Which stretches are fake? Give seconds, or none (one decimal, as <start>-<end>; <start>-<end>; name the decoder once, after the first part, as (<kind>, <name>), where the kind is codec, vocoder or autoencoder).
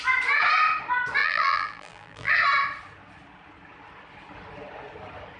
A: 1.2-2.3 (vocoder, BigVGAN v2)